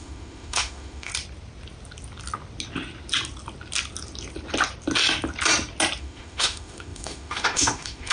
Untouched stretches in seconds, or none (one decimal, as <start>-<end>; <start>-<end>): 1.1-6.0